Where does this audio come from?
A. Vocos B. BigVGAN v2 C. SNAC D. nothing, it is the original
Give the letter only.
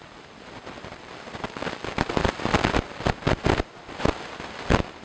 D